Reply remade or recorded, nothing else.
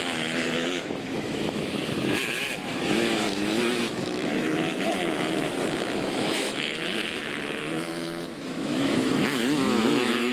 remade